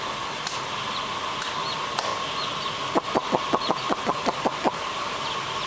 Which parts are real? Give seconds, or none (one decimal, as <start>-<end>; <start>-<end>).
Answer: 0.0-5.7